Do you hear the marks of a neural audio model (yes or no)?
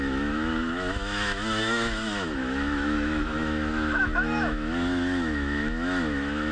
yes